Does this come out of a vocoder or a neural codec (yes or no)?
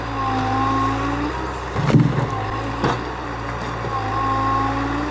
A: no